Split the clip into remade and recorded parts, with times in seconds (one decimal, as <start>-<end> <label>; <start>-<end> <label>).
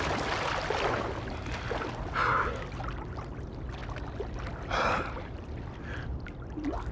0.0-6.9 recorded